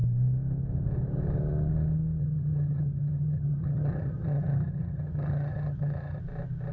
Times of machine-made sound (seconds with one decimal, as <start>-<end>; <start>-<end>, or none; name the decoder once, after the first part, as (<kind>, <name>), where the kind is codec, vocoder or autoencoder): 2.2-6.2 (vocoder, HiFi-GAN)